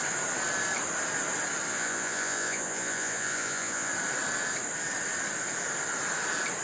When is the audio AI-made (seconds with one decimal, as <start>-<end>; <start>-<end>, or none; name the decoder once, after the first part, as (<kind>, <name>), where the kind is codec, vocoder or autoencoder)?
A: 1.7-3.9 (vocoder, Vocos)